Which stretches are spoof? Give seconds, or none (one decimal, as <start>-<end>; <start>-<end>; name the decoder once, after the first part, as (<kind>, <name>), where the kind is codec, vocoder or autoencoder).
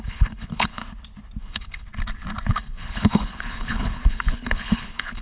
0.0-0.8 (codec, HILCodec); 1.4-1.9; 2.5-5.2